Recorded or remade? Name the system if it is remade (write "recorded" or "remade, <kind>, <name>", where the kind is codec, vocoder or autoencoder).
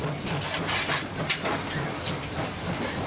recorded